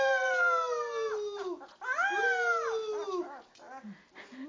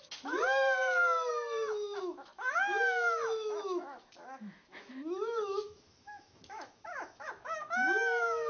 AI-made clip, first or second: second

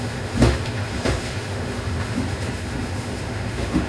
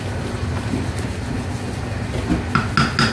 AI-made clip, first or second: first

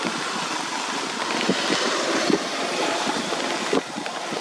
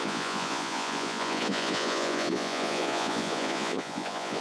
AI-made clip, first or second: second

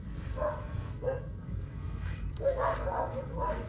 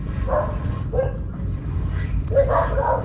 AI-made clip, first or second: first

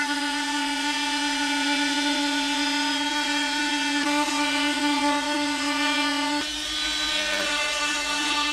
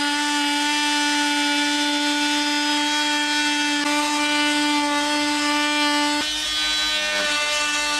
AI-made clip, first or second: first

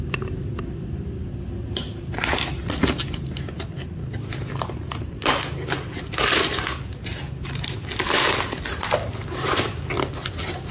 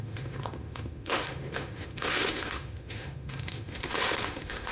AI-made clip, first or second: second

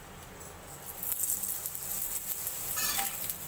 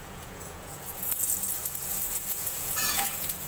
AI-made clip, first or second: second